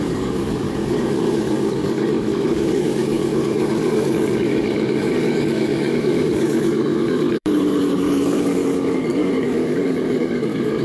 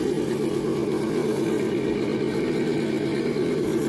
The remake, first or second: first